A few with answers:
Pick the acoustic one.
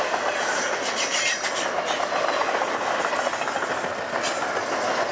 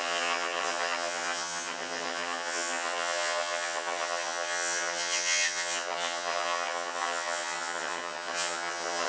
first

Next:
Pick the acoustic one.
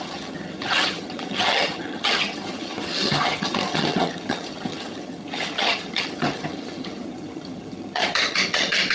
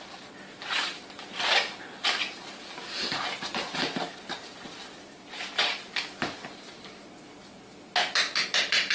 second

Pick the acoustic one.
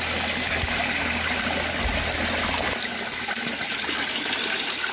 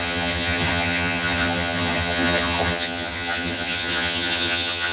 first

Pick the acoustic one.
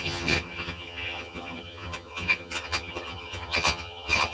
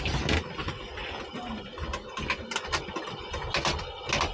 second